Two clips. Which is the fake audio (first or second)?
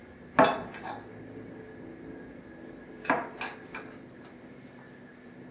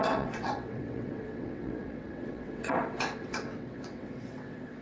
second